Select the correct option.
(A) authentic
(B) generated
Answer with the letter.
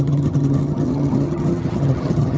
B